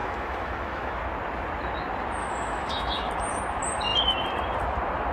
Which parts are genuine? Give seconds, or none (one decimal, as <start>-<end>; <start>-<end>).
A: 1.0-2.2; 3.1-5.1